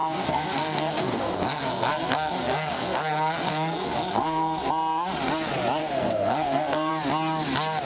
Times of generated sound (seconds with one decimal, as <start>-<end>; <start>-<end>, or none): 0.0-4.7; 5.8-6.9